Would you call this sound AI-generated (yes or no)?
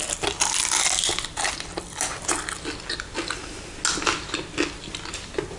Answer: no